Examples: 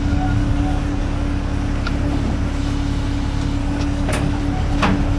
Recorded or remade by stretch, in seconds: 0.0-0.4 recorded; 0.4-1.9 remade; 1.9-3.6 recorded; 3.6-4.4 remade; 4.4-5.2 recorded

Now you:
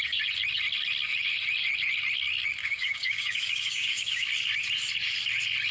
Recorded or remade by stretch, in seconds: 0.0-2.6 recorded; 2.6-4.3 remade; 4.3-5.7 recorded

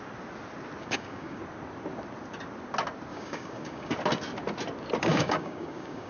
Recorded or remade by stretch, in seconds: 0.0-0.8 recorded; 0.8-1.4 remade; 1.4-3.1 recorded; 3.1-3.9 remade; 3.9-5.1 recorded; 5.1-6.1 remade

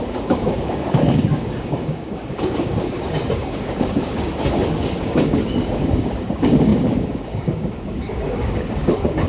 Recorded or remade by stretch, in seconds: 0.0-9.3 remade

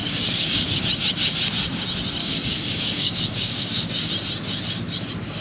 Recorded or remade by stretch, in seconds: 0.0-0.8 remade; 0.8-2.2 recorded; 2.2-4.1 remade; 4.1-5.4 recorded